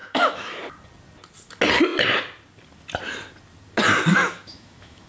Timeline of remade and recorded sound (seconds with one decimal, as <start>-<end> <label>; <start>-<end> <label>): 0.0-0.6 remade; 0.6-4.1 recorded; 4.1-5.1 remade